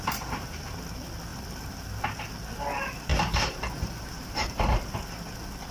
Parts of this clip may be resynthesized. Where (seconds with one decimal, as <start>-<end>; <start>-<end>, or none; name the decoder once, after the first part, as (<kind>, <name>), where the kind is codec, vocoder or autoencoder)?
3.1-4.6 (vocoder, BigVGAN v2)